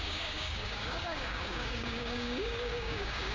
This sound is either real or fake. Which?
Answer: fake